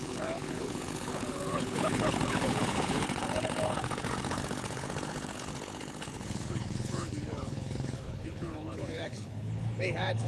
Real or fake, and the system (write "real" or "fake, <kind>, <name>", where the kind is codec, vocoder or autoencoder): fake, codec, HILCodec